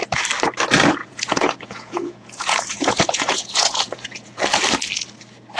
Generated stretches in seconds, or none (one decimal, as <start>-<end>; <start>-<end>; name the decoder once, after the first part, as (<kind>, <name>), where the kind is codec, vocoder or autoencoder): 1.0-4.4 (vocoder, Vocos)

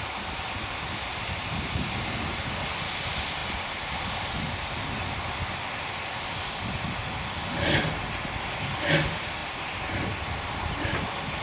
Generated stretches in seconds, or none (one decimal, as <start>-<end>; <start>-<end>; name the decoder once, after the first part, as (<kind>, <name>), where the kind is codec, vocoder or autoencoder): none

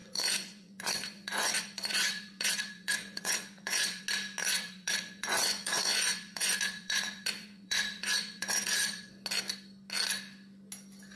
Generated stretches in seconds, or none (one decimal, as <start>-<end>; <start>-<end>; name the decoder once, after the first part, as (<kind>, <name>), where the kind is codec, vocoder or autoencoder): 0.0-4.0 (vocoder, Vocos); 4.4-9.1

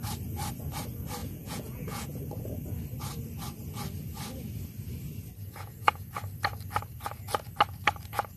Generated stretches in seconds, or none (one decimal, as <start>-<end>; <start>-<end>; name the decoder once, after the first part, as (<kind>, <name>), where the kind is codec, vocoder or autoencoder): 1.2-2.2 (vocoder, Vocos); 5.4-6.1

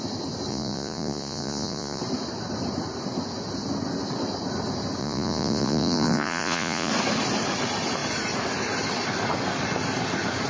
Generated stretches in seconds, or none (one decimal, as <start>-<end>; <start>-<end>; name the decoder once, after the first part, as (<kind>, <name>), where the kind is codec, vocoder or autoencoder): 0.5-2.0 (vocoder, Vocos); 5.0-6.9

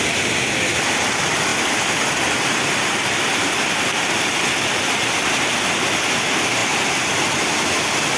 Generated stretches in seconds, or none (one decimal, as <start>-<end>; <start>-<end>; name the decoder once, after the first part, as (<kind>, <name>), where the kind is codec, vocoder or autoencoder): none

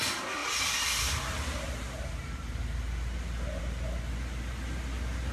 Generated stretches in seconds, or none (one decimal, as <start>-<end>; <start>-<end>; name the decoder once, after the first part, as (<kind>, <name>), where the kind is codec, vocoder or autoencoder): none

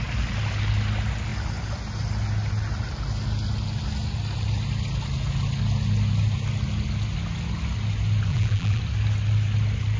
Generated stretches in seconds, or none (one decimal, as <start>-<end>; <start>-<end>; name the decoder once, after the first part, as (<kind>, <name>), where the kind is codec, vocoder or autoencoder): 8.3-8.8 (vocoder, BigVGAN v2)